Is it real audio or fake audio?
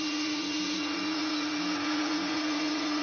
fake